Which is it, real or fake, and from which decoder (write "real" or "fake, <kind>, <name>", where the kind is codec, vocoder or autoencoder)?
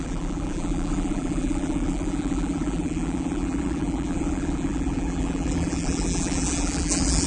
fake, vocoder, BigVGAN v2